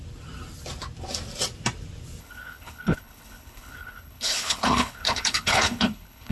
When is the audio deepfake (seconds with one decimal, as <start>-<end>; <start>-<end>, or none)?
2.2-6.3